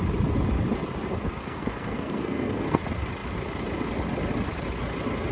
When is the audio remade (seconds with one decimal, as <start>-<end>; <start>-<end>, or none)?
1.1-2.8